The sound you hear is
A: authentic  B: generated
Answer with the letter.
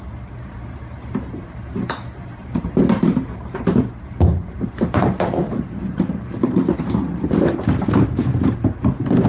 B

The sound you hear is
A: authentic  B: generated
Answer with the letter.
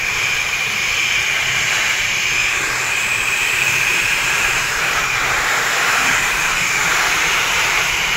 B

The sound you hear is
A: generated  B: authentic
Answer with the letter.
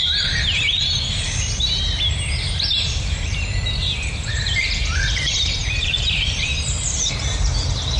A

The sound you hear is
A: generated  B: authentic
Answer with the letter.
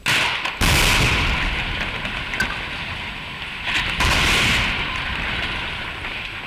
B